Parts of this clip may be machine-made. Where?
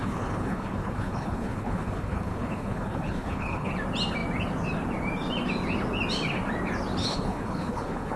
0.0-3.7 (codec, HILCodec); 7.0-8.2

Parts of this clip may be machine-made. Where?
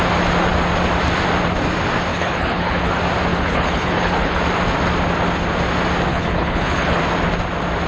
2.1-2.9 (codec, HILCodec); 3.3-4.4; 6.1-7.0